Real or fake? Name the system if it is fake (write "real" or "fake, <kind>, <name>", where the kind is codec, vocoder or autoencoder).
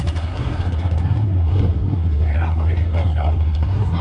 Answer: fake, codec, SNAC